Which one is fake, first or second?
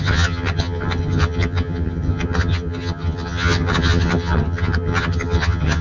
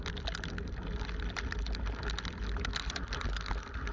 first